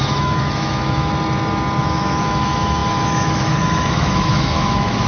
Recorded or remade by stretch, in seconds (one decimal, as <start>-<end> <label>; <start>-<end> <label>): 0.0-1.1 remade; 1.1-1.8 recorded; 1.8-5.1 remade